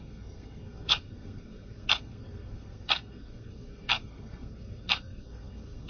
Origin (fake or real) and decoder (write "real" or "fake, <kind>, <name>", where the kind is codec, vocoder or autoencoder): fake, codec, SNAC